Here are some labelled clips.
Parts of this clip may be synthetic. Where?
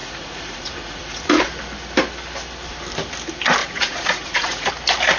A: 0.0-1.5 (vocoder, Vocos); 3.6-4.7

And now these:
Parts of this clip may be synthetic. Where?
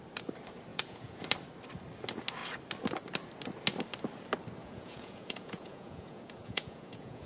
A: 0.7-1.2 (vocoder, Vocos); 4.6-7.3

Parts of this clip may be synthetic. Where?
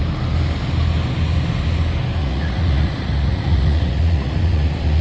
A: 2.2-5.0 (vocoder, Vocos)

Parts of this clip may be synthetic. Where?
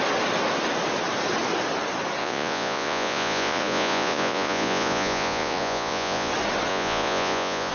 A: 2.2-6.3 (vocoder, Vocos); 6.7-7.7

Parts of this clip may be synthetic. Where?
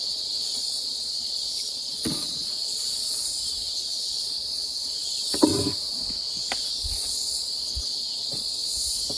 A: 0.0-5.5 (vocoder, Vocos); 6.7-8.6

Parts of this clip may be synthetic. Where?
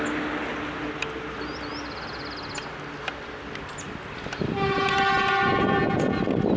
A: none